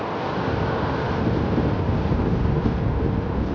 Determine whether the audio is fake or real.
real